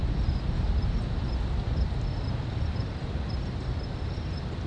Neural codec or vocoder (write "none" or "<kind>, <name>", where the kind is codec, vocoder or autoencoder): vocoder, BigVGAN v2